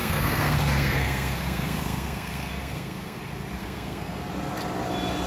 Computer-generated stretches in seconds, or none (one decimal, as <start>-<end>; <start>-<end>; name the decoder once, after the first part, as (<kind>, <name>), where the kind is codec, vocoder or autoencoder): 0.0-3.2 (codec, SNAC); 3.6-4.2